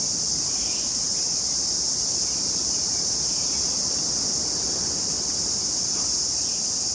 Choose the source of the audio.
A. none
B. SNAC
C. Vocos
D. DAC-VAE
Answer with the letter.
A